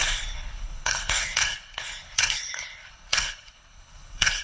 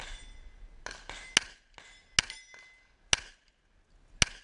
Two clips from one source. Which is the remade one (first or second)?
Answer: first